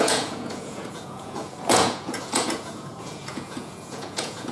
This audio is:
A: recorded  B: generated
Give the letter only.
B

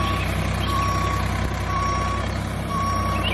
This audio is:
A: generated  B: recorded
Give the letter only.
B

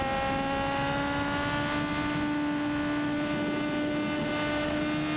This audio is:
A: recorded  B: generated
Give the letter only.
A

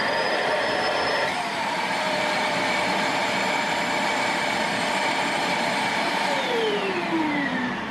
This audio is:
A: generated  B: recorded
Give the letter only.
A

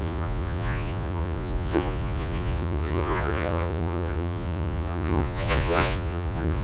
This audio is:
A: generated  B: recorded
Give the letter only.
A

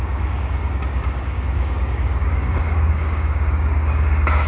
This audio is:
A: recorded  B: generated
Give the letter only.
B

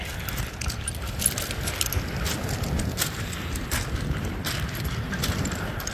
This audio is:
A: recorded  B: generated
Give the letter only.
A